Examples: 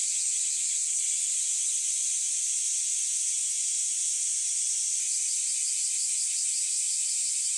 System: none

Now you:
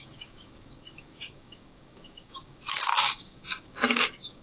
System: codec, DAC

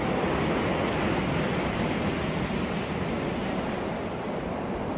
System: none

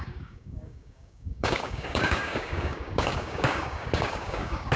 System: codec, DAC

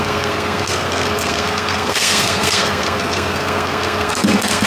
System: codec, SNAC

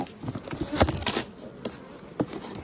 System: none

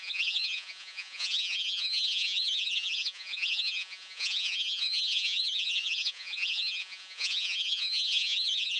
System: vocoder, Vocos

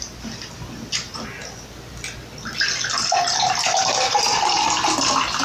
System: none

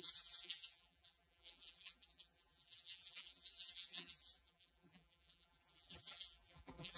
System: vocoder, BigVGAN v2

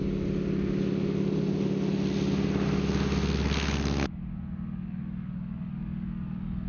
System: none